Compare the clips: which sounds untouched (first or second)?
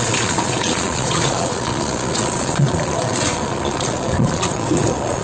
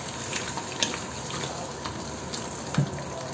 second